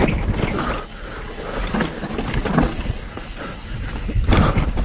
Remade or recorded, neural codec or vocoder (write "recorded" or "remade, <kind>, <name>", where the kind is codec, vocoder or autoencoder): recorded